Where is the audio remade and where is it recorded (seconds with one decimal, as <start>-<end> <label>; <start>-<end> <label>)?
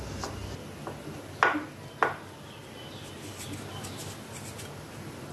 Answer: 0.0-5.3 recorded